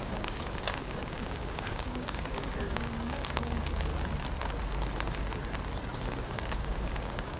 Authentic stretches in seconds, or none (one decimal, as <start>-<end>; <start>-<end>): 3.9-6.2